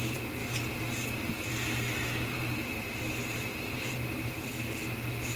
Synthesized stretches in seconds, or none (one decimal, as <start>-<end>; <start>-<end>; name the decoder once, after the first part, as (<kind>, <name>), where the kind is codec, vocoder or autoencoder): 0.0-0.4 (vocoder, BigVGAN v2); 2.0-4.5